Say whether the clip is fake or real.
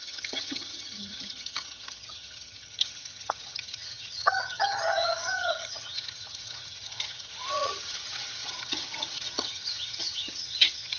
fake